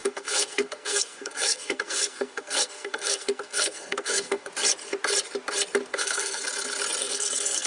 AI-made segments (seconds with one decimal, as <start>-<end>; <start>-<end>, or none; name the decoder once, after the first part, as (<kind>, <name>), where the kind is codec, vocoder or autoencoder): 0.0-4.5 (codec, SNAC); 5.9-6.4; 7.0-7.7